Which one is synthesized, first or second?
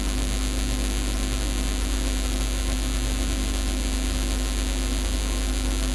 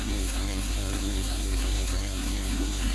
second